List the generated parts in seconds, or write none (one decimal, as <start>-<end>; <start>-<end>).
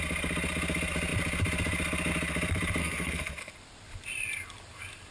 2.8-3.5